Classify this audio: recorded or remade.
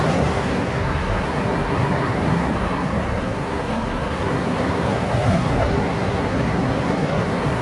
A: remade